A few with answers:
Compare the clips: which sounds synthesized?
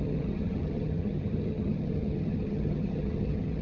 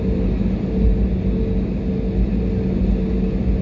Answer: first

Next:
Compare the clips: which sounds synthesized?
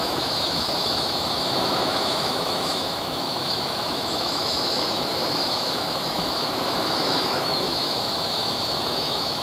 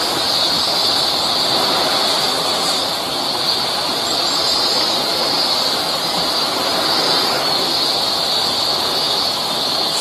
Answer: first